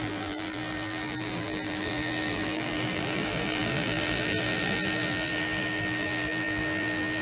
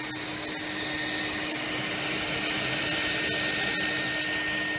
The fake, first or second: first